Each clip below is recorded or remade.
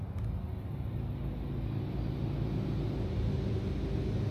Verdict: recorded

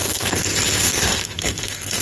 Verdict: remade